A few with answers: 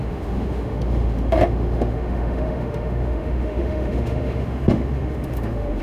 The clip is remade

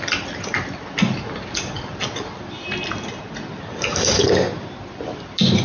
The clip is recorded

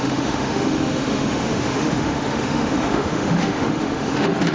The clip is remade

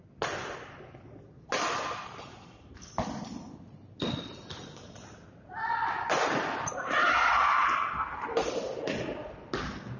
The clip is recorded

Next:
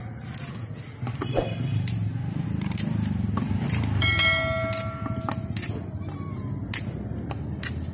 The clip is recorded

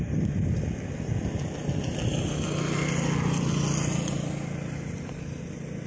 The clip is recorded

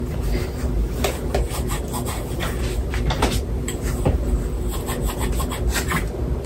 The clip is recorded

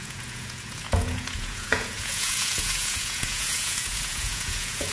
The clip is remade